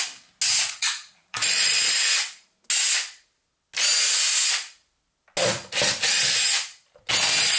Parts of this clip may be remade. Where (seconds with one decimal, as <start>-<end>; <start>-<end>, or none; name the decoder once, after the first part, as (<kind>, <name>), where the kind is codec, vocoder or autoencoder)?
0.5-1.7 (vocoder, Vocos)